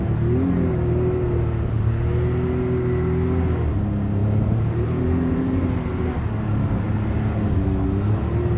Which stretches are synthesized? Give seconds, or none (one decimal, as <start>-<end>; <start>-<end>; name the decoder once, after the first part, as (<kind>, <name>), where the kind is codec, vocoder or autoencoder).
4.2-6.1 (vocoder, BigVGAN v2)